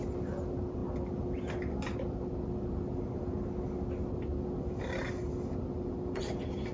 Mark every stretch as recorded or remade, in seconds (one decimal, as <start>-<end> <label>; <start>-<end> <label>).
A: 0.0-6.7 recorded